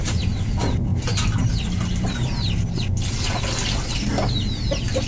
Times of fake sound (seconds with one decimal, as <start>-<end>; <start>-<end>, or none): none